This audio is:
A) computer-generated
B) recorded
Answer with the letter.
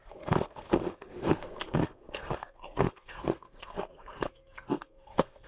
A